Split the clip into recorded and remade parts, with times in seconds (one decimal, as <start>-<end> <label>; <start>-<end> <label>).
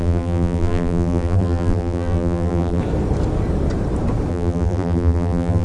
0.0-2.8 remade; 2.8-4.3 recorded; 4.3-5.6 remade